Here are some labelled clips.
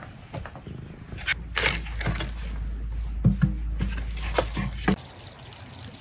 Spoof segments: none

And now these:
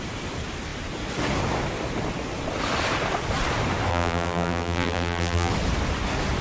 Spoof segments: 3.9-5.5 (vocoder, BigVGAN v2)

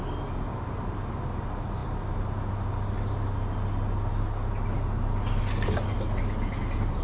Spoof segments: 0.5-1.1 (vocoder, BigVGAN v2)

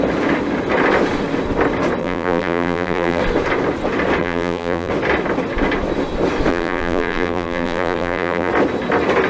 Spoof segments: 2.0-3.2 (vocoder, BigVGAN v2); 4.2-4.9; 6.5-8.5

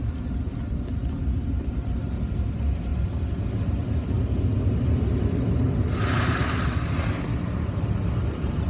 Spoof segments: 6.0-6.6 (vocoder, BigVGAN v2)

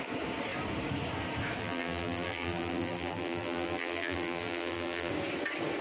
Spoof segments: 1.6-5.1 (vocoder, BigVGAN v2)